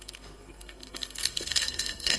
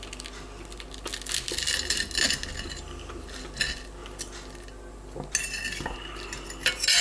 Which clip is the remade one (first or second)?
first